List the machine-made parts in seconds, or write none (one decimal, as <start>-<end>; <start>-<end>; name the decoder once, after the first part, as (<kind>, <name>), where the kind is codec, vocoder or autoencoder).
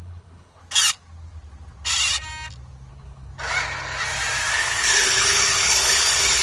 0.0-0.6 (codec, HILCodec); 2.9-3.3; 4.5-6.4